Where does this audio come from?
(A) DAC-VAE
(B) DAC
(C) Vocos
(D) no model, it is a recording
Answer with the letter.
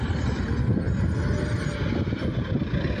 D